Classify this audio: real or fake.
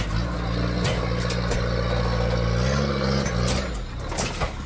real